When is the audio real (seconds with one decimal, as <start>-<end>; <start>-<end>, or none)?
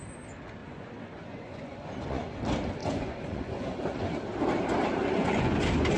0.0-0.6; 2.4-2.8; 4.2-5.0; 5.6-6.0